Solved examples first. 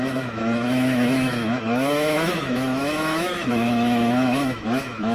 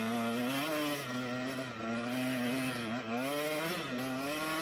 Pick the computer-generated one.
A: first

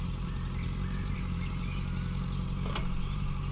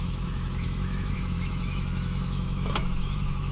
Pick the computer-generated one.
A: second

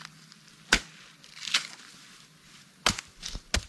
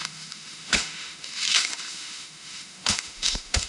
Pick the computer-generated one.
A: second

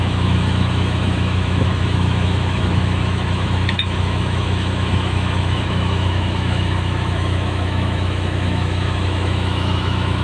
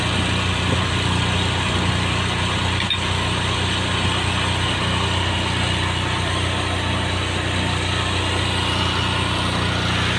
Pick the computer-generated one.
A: first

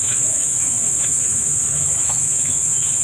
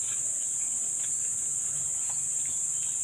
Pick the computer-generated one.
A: first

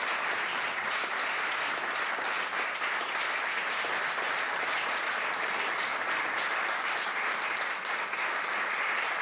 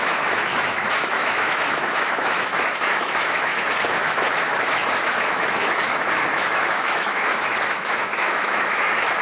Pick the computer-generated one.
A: second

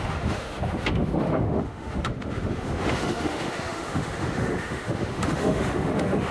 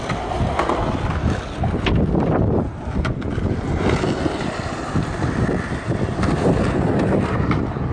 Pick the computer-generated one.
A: first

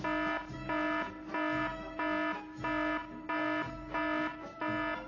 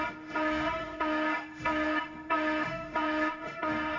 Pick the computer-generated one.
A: second